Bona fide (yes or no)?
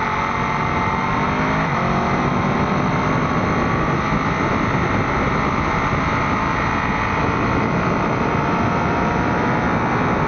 yes